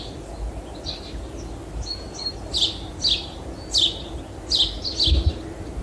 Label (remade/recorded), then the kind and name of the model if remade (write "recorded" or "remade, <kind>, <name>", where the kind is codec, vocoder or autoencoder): recorded